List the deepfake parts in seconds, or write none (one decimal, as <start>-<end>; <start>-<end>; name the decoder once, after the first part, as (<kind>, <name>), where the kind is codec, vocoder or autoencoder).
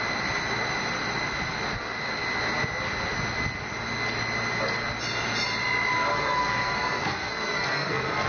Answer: 6.1-8.3 (codec, SNAC)